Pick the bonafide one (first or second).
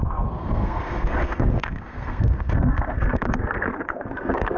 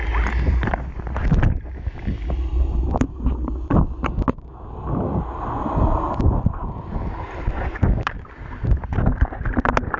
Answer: second